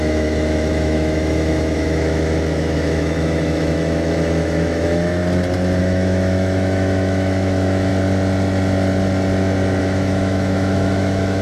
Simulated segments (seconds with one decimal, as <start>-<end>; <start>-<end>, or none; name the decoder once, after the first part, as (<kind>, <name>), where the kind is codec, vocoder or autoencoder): 0.0-5.2 (autoencoder, DAC-VAE); 5.8-7.9; 9.8-11.4